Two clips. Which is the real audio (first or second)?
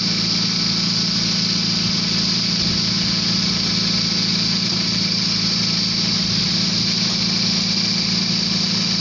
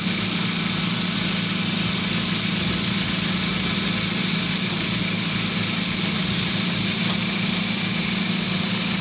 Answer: first